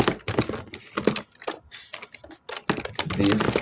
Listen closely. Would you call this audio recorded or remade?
recorded